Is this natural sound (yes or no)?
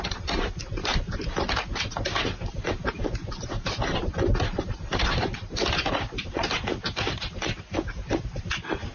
no